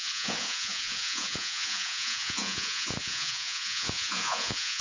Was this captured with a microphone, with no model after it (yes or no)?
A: no